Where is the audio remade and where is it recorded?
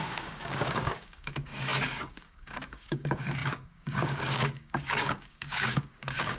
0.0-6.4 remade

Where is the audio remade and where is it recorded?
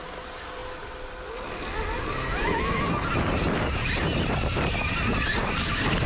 0.0-6.1 recorded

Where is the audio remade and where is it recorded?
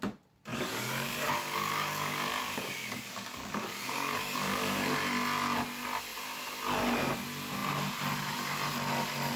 0.0-0.5 recorded; 0.5-5.0 remade; 5.0-9.4 recorded